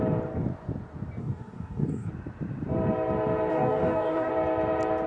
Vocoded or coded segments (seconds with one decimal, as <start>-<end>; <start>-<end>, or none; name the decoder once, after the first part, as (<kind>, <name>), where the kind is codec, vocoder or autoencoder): 1.2-2.1 (codec, DAC); 3.5-4.3